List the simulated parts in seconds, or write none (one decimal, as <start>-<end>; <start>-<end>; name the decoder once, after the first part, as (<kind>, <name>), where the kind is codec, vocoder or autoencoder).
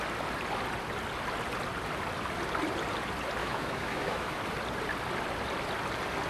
3.4-4.4 (autoencoder, DAC-VAE)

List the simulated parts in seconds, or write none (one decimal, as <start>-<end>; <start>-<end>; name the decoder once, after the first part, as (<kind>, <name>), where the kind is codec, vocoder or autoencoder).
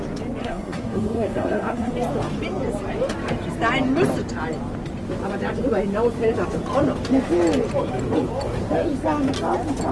0.4-1.9 (codec, SNAC)